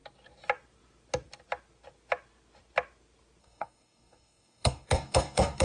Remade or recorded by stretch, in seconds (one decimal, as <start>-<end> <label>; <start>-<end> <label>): 0.0-3.4 recorded; 3.4-5.6 remade